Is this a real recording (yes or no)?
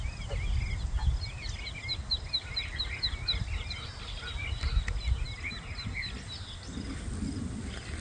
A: yes